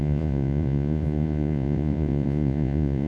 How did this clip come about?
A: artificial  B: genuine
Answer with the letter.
A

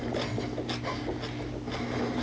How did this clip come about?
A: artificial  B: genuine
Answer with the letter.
B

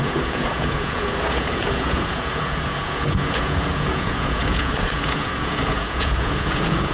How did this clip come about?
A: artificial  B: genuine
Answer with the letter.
A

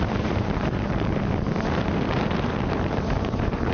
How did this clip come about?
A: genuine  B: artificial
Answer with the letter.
B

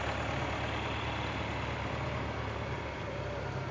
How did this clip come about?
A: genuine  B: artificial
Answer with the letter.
A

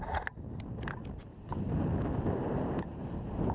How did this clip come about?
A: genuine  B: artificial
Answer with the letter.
A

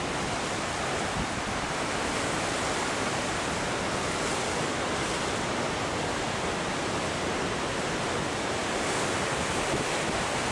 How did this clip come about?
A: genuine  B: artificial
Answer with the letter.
A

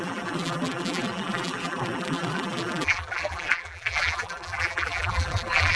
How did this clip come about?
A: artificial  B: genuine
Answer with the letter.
A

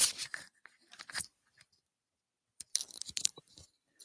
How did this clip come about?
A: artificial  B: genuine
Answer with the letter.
A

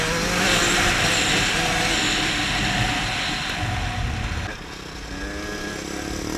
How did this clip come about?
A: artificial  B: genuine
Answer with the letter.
B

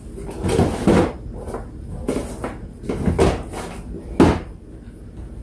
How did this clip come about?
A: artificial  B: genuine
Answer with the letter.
B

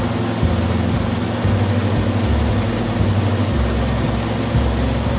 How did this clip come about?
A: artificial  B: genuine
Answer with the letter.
B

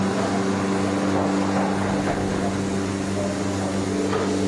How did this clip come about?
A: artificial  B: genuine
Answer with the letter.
B